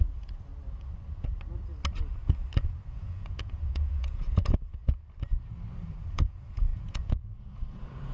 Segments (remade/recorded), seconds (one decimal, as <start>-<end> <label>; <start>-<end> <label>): 0.0-0.5 remade; 0.5-2.9 recorded; 2.9-4.8 remade; 4.8-6.0 recorded; 6.0-8.1 remade